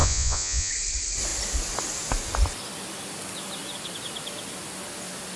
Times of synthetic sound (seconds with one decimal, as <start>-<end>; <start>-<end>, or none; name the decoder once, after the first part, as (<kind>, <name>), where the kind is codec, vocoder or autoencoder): 0.0-0.7 (vocoder, Vocos)